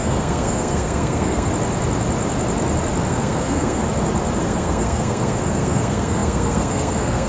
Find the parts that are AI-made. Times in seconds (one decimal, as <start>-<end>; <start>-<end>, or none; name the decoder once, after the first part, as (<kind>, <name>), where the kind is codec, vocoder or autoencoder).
0.0-1.5 (codec, SNAC); 3.1-3.8; 4.4-7.3